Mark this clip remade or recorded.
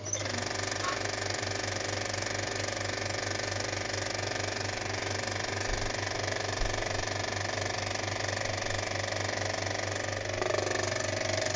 recorded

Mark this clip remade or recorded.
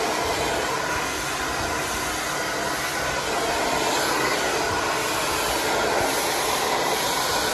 recorded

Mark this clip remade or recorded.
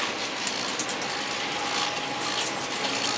recorded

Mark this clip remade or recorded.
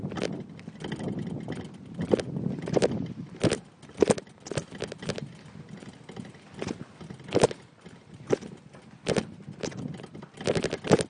recorded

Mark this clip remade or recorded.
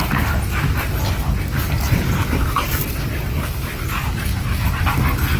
recorded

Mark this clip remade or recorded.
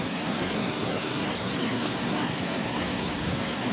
remade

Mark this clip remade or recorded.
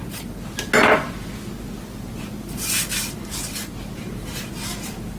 recorded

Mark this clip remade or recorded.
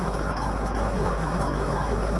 remade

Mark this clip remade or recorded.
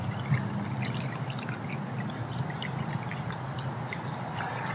recorded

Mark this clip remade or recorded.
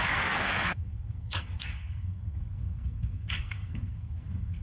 remade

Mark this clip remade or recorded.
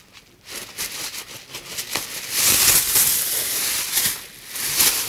recorded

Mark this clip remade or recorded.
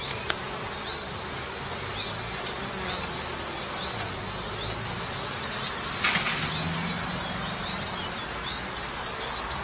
recorded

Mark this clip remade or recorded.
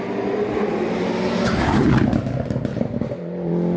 recorded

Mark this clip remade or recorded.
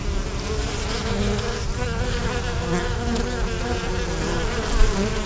recorded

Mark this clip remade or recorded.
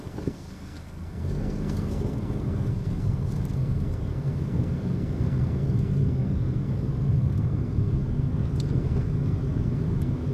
remade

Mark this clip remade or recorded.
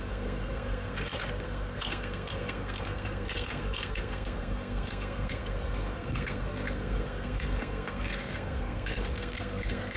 remade